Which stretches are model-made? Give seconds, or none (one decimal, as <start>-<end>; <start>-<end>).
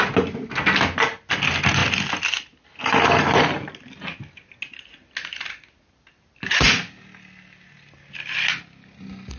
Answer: none